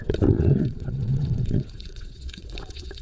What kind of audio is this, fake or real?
fake